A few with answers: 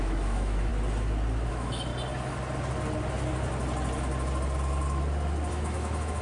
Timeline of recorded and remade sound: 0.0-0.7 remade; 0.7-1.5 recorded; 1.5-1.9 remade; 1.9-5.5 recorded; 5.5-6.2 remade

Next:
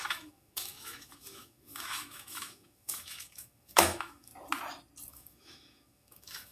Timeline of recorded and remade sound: 0.0-4.3 remade; 4.3-5.1 recorded; 5.1-6.5 remade

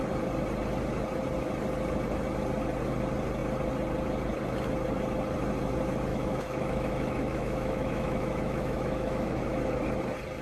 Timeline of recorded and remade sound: 0.0-6.1 recorded; 6.1-9.6 remade; 9.6-10.4 recorded